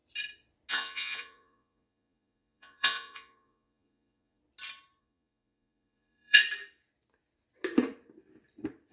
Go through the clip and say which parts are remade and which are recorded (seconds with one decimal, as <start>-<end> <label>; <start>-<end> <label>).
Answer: 0.0-0.7 recorded; 0.7-4.4 remade; 4.4-5.0 recorded; 5.0-6.4 remade; 6.4-8.9 recorded